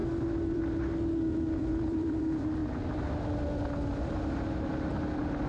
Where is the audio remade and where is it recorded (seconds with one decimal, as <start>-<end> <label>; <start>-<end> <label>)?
0.0-0.6 remade; 0.6-1.6 recorded; 1.6-2.2 remade; 2.2-5.5 recorded